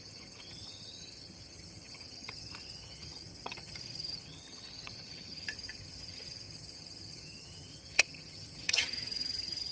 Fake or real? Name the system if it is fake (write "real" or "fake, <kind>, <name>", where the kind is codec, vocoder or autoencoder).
fake, vocoder, HiFi-GAN